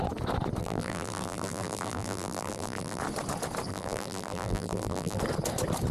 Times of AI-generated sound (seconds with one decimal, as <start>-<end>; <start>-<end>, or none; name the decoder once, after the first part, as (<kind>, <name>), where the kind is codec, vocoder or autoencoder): 0.6-3.0 (vocoder, BigVGAN v2); 3.7-5.2